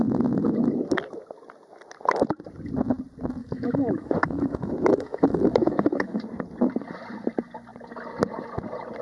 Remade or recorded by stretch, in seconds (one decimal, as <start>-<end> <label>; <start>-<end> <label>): 0.0-3.4 recorded; 3.4-6.2 remade; 6.2-9.0 recorded